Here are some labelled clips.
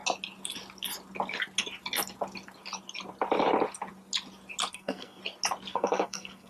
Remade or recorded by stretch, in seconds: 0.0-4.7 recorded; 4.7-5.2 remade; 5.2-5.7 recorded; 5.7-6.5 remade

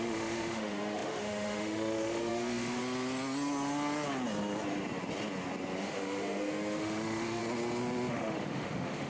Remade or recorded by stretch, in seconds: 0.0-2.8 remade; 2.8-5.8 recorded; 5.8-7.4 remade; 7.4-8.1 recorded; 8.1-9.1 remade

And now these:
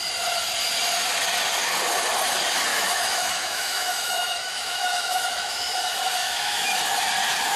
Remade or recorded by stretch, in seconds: 0.0-2.7 recorded; 2.7-5.8 remade; 5.8-6.2 recorded; 6.2-6.8 remade; 6.8-7.6 recorded

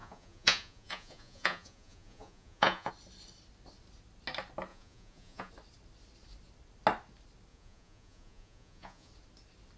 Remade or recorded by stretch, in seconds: 0.0-2.9 remade; 2.9-4.7 recorded; 4.7-5.5 remade; 5.5-7.5 recorded; 7.5-9.1 remade; 9.1-9.8 recorded

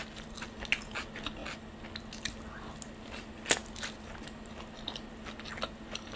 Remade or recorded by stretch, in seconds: 0.0-6.2 recorded

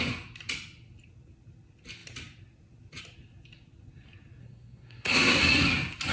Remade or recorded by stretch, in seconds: 0.0-4.4 recorded; 4.4-5.4 remade; 5.4-6.1 recorded